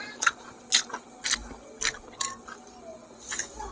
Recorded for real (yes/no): yes